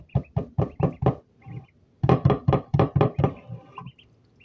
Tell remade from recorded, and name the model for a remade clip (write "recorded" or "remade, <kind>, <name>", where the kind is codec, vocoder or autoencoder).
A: recorded